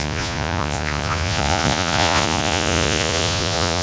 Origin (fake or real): fake